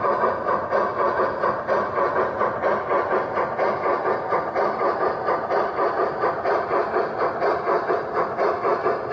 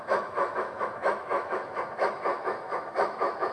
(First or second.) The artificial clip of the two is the second